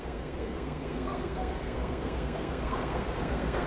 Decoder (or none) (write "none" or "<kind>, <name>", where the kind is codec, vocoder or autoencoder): codec, SNAC